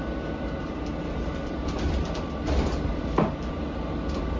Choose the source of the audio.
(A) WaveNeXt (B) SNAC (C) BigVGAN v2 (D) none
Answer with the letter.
D